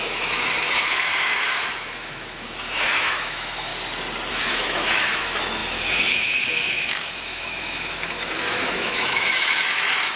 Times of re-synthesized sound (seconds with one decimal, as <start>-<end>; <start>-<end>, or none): 0.0-3.7; 4.3-10.2